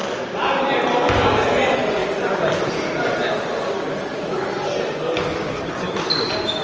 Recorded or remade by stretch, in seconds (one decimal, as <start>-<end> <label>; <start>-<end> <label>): 0.0-6.6 recorded